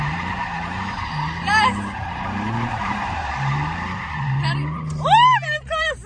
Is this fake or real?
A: fake